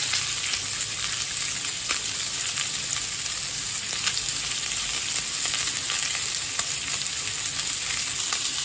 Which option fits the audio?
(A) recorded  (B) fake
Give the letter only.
A